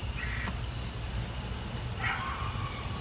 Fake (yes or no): no